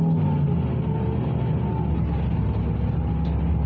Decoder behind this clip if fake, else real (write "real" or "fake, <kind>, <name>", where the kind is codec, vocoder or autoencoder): real